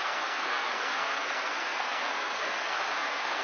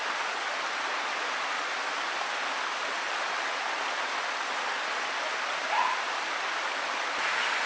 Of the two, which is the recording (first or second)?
second